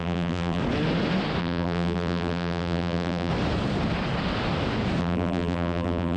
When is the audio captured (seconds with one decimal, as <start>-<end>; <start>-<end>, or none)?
0.6-1.4; 3.3-5.0